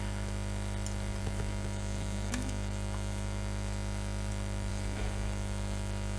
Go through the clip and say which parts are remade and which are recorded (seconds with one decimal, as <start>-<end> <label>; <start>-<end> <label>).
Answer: 0.0-1.2 recorded; 1.2-4.3 remade; 4.3-4.7 recorded; 4.7-6.2 remade